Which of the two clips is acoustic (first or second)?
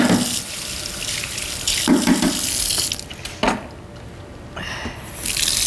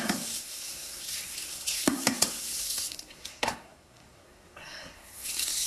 first